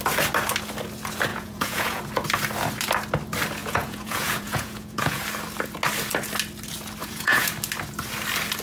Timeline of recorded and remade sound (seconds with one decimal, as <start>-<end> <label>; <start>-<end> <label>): 0.0-1.3 recorded; 1.3-2.0 remade; 2.0-3.6 recorded; 3.6-5.2 remade; 5.2-7.0 recorded; 7.0-7.5 remade; 7.5-8.6 recorded